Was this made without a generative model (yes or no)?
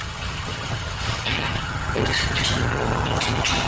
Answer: no